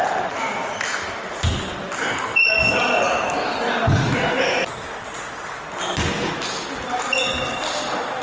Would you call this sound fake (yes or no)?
no